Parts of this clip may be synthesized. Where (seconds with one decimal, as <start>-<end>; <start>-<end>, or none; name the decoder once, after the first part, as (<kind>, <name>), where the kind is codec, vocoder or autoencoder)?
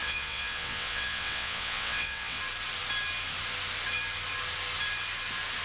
0.0-2.4 (vocoder, WaveNeXt)